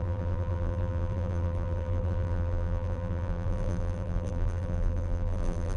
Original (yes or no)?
no